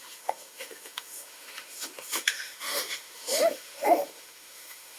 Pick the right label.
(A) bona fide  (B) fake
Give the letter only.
B